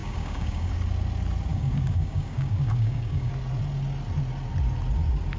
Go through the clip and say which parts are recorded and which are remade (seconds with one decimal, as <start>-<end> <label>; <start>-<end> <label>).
0.0-0.7 remade; 0.7-1.5 recorded; 1.5-3.3 remade; 3.3-5.4 recorded

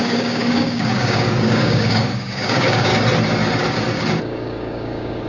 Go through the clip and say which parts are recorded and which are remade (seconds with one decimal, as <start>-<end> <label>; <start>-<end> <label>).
0.0-2.9 remade; 2.9-4.2 recorded; 4.2-5.3 remade

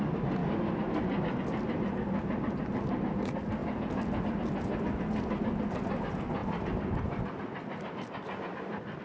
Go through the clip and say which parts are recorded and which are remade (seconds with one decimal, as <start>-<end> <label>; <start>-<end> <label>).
0.0-9.0 recorded

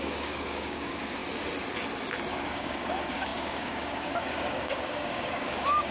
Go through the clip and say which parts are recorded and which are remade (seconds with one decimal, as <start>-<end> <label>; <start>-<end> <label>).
0.0-1.2 remade; 1.2-2.3 recorded; 2.3-5.9 remade

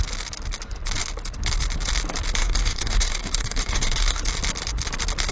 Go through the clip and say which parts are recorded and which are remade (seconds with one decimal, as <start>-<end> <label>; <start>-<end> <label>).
0.0-2.4 recorded; 2.4-4.2 remade; 4.2-5.3 recorded

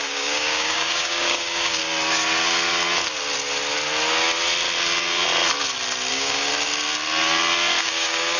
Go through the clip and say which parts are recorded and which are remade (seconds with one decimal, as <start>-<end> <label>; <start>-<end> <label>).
0.0-1.8 remade; 1.8-6.1 recorded; 6.1-6.5 remade; 6.5-7.8 recorded; 7.8-8.4 remade

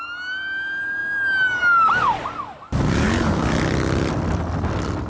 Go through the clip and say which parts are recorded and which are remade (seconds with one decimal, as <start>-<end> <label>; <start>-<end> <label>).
0.0-5.1 recorded

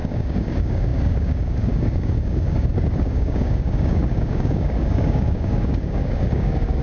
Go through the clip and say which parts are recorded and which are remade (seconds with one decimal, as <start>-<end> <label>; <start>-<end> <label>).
0.0-6.8 remade